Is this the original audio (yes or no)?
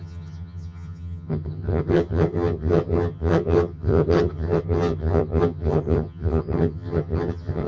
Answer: no